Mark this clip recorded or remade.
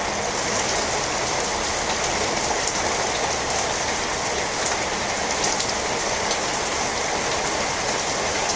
recorded